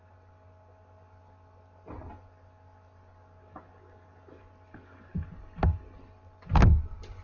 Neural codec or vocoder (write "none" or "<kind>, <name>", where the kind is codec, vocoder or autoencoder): none